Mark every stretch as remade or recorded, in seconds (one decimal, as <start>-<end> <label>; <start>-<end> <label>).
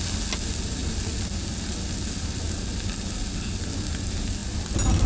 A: 0.0-5.1 recorded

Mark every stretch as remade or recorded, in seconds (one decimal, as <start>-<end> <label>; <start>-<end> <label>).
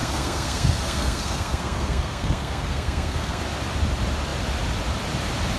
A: 0.0-3.4 remade; 3.4-5.6 recorded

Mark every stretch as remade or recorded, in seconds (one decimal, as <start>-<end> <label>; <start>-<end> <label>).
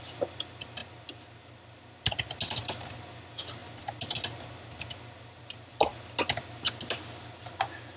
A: 0.0-8.0 recorded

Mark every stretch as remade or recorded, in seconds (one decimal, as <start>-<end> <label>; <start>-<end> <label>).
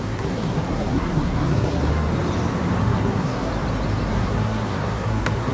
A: 0.0-2.1 remade; 2.1-2.8 recorded; 2.8-3.5 remade; 3.5-4.1 recorded; 4.1-5.5 remade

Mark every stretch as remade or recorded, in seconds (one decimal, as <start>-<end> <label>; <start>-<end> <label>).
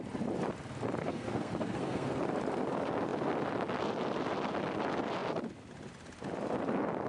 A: 0.0-1.0 recorded; 1.0-2.2 remade; 2.2-7.1 recorded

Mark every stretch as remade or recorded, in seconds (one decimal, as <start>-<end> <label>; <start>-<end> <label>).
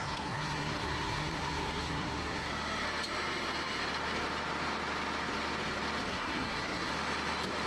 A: 0.0-2.5 remade; 2.5-6.1 recorded; 6.1-6.9 remade; 6.9-7.7 recorded